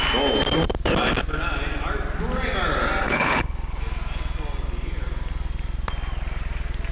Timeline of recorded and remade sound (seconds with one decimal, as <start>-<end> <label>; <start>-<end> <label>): 0.0-3.0 recorded; 3.0-3.8 remade; 3.8-6.9 recorded